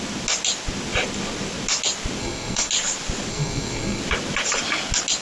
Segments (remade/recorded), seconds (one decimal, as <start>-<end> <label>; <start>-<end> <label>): 0.0-2.2 recorded; 2.2-2.7 remade; 2.7-3.3 recorded; 3.3-4.0 remade; 4.0-5.2 recorded

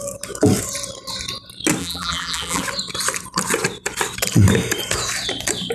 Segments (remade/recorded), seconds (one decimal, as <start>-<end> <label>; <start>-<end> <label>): 0.0-1.8 recorded; 1.8-2.6 remade; 2.6-5.7 recorded

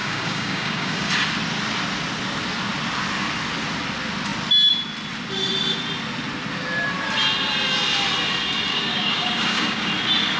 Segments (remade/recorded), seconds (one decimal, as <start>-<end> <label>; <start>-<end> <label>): 0.0-1.1 remade; 1.1-8.7 recorded; 8.7-9.9 remade; 9.9-10.4 recorded

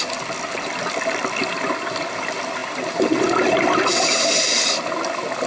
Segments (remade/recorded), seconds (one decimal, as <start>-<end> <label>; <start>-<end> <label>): 0.0-5.5 recorded

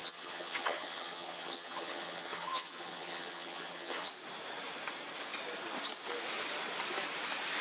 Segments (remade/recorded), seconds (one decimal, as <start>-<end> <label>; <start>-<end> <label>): 0.0-4.1 remade; 4.1-7.6 recorded